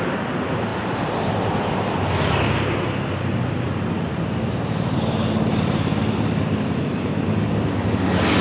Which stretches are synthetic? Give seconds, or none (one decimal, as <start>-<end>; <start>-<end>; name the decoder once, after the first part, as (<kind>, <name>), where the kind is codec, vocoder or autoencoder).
none